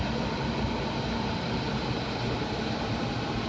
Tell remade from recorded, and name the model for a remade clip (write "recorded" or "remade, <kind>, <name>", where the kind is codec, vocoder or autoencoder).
recorded